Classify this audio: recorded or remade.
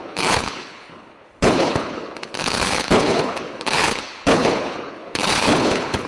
remade